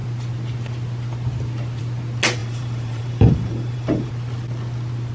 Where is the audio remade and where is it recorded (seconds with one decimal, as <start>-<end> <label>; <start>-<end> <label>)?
0.0-2.4 recorded; 2.4-4.1 remade; 4.1-5.1 recorded